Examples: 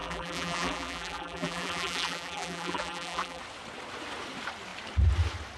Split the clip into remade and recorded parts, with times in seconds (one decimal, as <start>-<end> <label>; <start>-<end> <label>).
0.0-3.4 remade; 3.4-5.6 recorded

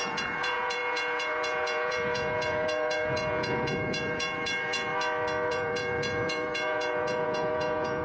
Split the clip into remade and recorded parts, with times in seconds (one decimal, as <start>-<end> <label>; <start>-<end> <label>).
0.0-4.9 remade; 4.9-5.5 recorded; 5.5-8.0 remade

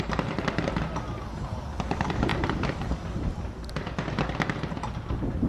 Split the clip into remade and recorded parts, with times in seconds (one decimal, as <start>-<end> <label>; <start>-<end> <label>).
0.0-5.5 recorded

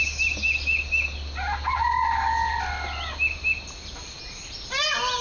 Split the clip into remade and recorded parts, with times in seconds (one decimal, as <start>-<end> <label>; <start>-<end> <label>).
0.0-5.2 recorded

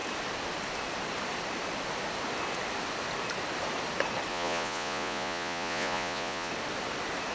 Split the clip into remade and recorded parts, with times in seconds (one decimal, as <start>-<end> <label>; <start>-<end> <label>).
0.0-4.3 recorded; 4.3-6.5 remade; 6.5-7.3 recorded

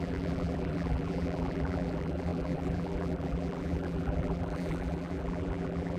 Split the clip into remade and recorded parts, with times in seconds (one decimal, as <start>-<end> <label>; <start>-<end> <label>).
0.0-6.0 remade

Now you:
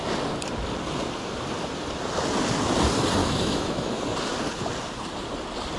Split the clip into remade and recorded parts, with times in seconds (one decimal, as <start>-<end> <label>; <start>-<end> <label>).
0.0-3.2 recorded; 3.2-4.0 remade; 4.0-5.8 recorded

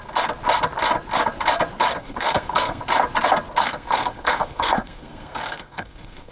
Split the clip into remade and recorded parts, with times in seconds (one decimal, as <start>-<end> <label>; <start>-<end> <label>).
0.0-2.0 recorded; 2.0-2.8 remade; 2.8-3.6 recorded; 3.6-6.3 remade